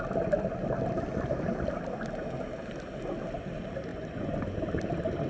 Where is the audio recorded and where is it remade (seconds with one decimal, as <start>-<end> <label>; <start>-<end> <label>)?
0.0-3.9 recorded; 3.9-4.6 remade; 4.6-5.3 recorded